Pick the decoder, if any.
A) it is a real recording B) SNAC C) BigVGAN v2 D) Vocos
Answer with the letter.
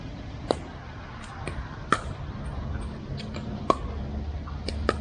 A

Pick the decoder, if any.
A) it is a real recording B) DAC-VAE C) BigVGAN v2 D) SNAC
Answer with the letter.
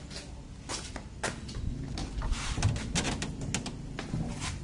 A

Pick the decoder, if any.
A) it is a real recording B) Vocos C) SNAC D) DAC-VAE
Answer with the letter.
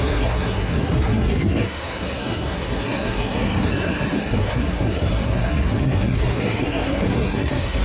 C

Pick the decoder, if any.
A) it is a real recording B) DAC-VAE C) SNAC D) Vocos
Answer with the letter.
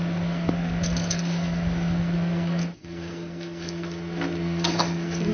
C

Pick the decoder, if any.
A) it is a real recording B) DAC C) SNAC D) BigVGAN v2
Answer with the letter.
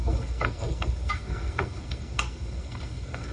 C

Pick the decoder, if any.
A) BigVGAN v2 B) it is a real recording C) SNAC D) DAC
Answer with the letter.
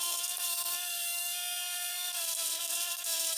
C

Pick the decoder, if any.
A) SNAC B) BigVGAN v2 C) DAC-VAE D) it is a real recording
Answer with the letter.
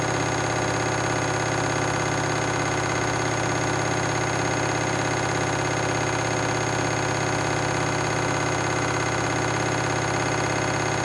D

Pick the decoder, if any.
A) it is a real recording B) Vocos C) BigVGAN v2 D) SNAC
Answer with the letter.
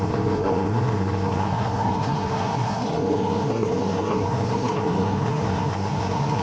D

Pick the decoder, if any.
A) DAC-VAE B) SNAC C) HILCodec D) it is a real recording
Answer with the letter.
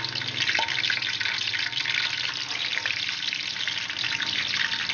D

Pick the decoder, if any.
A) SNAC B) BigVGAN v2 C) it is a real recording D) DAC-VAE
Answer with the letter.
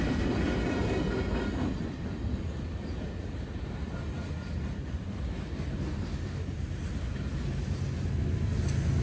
C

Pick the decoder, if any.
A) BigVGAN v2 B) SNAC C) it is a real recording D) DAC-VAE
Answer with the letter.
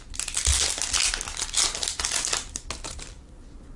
C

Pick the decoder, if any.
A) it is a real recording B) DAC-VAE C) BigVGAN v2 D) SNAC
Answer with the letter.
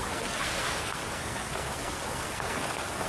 D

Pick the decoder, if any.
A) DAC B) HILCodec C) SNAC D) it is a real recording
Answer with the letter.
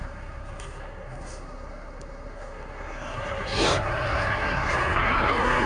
C